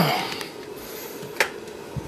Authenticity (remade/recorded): recorded